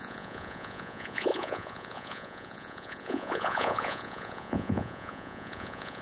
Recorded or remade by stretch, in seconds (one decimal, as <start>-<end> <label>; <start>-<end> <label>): 0.0-6.0 remade